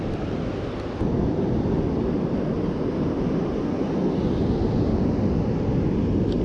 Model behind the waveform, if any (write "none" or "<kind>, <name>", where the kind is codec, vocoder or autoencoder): none